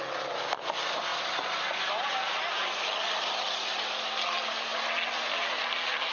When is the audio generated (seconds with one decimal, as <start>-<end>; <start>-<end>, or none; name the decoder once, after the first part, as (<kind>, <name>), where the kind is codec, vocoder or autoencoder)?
none